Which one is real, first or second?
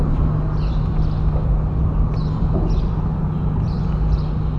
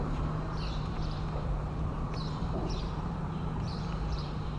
first